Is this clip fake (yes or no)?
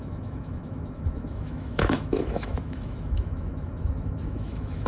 yes